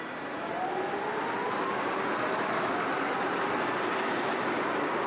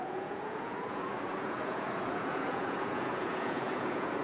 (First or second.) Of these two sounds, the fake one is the second